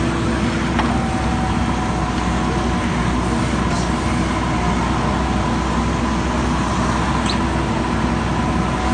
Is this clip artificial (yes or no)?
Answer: no